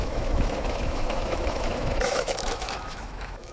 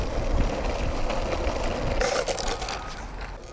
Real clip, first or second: second